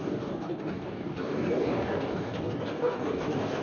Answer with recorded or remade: remade